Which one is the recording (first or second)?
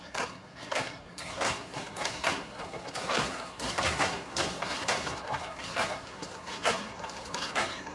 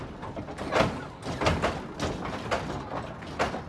second